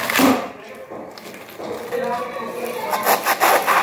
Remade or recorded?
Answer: recorded